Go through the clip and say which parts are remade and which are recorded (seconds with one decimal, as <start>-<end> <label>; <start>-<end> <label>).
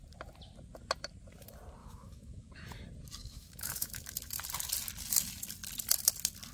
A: 0.0-1.8 recorded; 1.8-2.5 remade; 2.5-3.2 recorded; 3.2-4.3 remade; 4.3-6.5 recorded